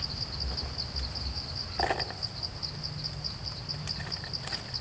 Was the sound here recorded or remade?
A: recorded